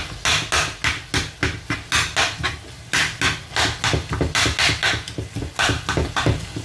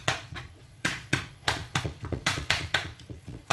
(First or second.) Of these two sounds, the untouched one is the first